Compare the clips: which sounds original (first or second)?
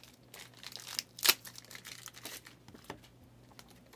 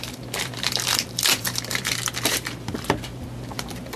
first